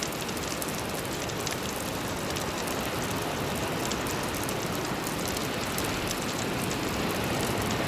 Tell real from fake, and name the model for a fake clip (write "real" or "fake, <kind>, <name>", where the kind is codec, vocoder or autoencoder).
real